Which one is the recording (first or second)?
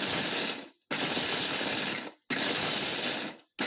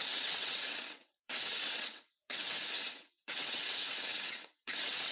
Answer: first